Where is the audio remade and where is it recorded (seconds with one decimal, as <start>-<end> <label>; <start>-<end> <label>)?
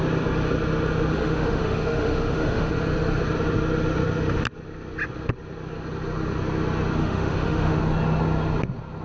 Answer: 0.0-1.1 recorded; 1.1-2.7 remade; 2.7-7.0 recorded; 7.0-7.8 remade; 7.8-9.0 recorded